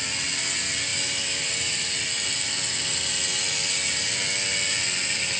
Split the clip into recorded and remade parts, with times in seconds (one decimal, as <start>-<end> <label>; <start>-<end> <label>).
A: 0.0-0.9 recorded; 0.9-4.1 remade; 4.1-5.4 recorded